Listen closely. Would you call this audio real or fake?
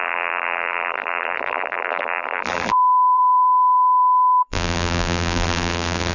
fake